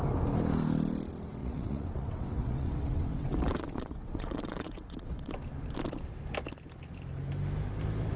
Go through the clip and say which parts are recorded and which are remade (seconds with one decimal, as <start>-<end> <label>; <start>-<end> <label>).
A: 0.0-1.4 recorded; 1.4-5.3 remade; 5.3-8.2 recorded